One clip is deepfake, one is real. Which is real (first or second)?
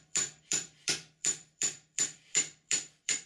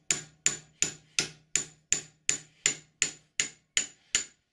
second